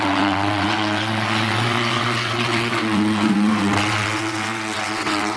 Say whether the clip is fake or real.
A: fake